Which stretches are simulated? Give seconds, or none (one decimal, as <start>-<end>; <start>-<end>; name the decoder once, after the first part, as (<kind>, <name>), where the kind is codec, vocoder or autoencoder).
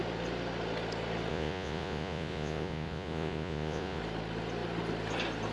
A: 1.3-4.0 (vocoder, Vocos)